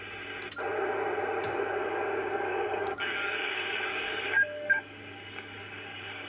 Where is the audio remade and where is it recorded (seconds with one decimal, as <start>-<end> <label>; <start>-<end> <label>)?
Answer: 0.0-2.5 recorded; 2.5-6.3 remade